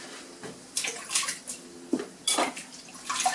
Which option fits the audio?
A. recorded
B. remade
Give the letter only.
A